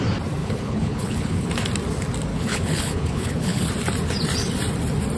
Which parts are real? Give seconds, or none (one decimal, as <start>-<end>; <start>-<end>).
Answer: 0.0-0.4; 1.5-2.3; 3.7-5.2